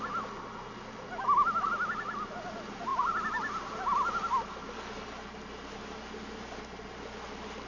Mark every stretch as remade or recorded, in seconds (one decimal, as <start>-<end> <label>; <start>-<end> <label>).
0.0-7.7 recorded